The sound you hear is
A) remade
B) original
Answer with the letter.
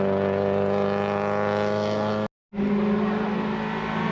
B